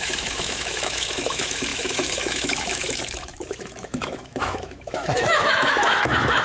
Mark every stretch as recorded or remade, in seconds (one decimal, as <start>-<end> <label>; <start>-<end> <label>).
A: 0.0-6.4 remade